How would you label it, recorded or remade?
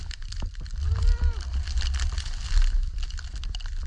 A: remade